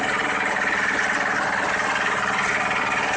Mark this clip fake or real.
real